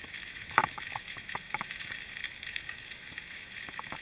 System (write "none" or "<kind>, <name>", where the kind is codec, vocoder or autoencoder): autoencoder, DAC-VAE